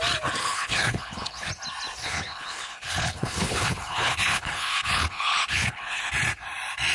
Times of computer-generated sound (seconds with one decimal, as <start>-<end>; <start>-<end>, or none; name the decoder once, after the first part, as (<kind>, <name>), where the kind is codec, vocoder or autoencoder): 0.4-1.5 (codec, HILCodec); 2.0-6.1